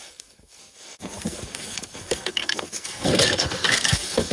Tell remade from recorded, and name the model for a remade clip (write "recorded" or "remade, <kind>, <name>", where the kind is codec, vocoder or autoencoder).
remade, codec, SNAC